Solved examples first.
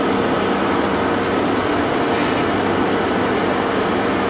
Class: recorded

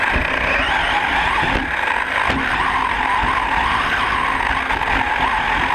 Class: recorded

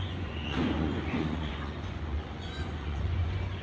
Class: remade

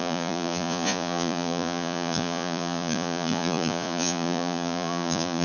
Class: remade